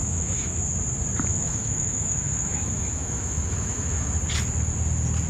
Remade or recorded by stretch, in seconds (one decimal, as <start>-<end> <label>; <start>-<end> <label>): 0.0-0.6 remade; 0.6-1.3 recorded; 1.3-4.1 remade; 4.1-5.3 recorded